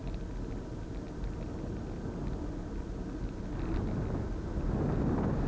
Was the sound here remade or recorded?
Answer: recorded